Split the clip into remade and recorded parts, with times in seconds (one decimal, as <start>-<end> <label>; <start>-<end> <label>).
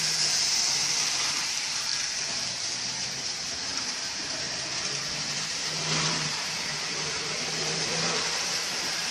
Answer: 0.0-1.9 remade; 1.9-2.5 recorded; 2.5-9.1 remade